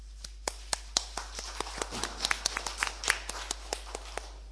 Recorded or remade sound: recorded